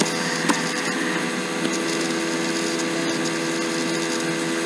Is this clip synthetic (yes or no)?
no